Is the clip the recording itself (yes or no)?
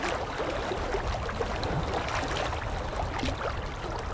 yes